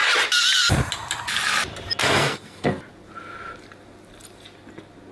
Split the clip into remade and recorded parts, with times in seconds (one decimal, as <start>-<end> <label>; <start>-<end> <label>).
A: 0.0-2.0 recorded; 2.0-2.7 remade; 2.7-5.1 recorded